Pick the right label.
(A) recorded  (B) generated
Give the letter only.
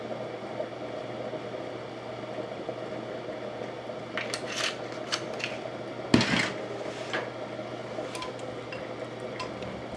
A